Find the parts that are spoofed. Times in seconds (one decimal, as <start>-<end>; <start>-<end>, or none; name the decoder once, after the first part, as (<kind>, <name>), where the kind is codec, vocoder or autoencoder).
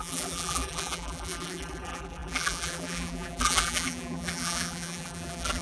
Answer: 0.0-5.6 (vocoder, BigVGAN v2)